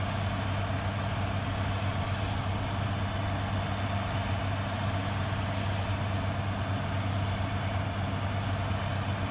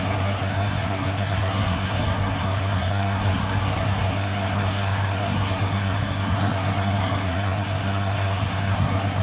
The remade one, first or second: second